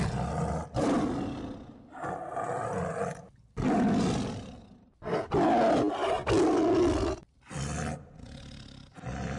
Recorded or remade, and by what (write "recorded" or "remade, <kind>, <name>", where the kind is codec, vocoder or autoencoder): recorded